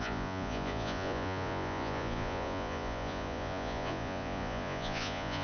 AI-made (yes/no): yes